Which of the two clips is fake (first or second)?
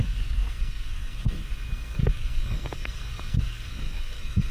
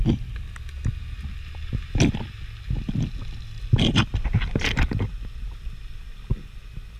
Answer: first